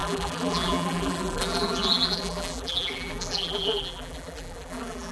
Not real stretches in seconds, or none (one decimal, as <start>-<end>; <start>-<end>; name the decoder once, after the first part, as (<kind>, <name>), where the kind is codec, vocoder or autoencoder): 0.0-5.1 (vocoder, BigVGAN v2)